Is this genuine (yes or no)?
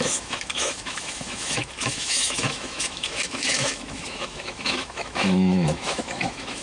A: no